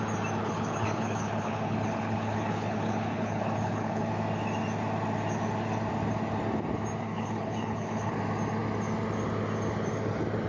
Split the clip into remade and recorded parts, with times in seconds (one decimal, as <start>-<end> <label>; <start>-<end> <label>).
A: 0.0-0.4 recorded; 0.4-4.1 remade; 4.1-7.0 recorded; 7.0-8.2 remade; 8.2-10.5 recorded